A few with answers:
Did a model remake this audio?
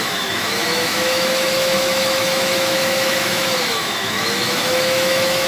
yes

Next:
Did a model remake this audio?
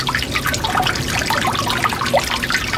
no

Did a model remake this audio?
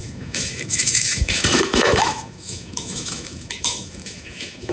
yes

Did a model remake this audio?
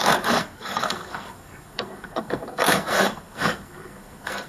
yes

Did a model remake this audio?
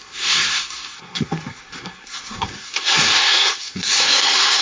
yes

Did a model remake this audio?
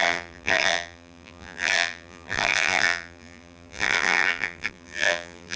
yes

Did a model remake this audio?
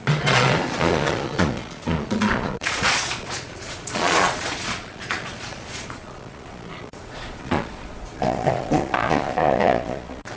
yes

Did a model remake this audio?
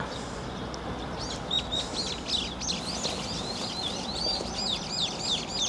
no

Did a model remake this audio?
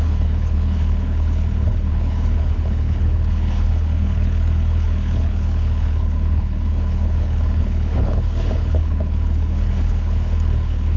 yes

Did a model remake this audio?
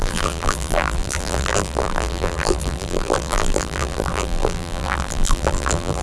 yes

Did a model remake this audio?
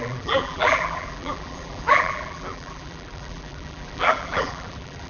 yes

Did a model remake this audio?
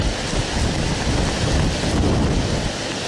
no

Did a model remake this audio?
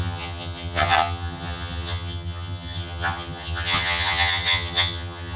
yes